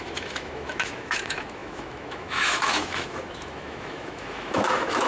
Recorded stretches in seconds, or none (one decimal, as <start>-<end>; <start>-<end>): none

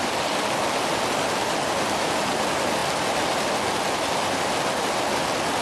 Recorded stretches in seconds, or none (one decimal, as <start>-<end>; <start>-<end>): 0.0-5.6

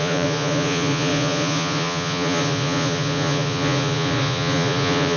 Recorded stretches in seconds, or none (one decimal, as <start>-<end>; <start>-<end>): none

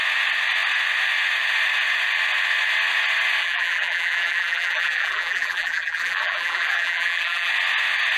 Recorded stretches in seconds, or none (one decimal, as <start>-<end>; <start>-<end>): 0.0-3.4; 7.5-8.2

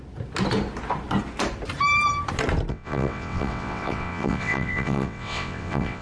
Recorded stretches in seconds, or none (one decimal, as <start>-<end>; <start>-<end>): 0.0-2.7

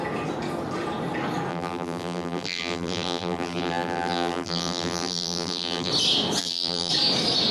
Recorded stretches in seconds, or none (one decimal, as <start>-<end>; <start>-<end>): 0.0-1.5; 5.9-6.4; 6.9-7.5

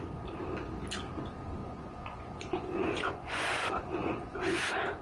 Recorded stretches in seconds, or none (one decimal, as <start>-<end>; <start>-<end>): 0.0-1.6; 4.6-5.0

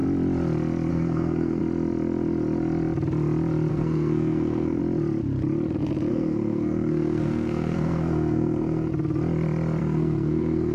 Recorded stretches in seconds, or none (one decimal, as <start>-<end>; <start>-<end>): 0.0-0.9; 1.6-3.7; 4.8-6.1; 8.9-9.8